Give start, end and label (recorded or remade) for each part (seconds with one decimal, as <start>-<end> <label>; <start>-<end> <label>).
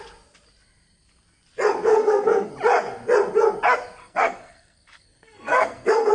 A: 0.0-1.9 recorded; 1.9-2.5 remade; 2.5-4.0 recorded; 4.0-6.1 remade